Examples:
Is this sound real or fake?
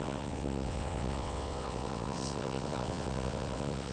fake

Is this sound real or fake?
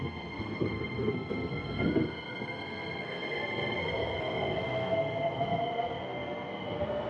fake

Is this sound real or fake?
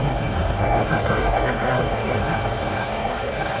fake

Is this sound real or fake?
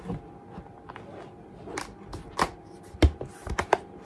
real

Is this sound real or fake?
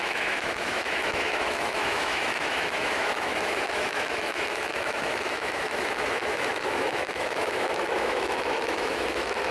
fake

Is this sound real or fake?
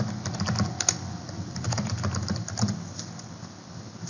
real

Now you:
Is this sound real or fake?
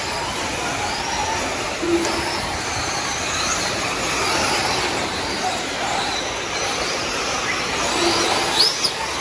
real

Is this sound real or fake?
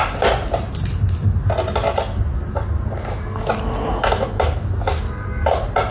real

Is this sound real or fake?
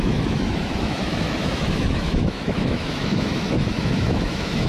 fake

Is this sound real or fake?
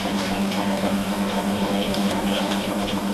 fake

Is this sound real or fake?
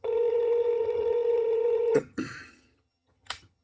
fake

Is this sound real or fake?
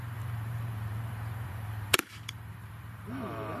fake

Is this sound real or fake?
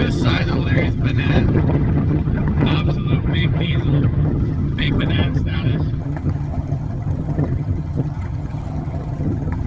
fake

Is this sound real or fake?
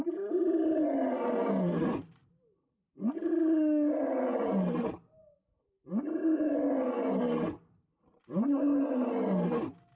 real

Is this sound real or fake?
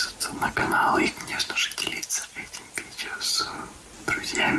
real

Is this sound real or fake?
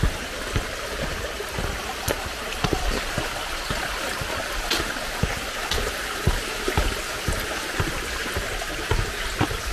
real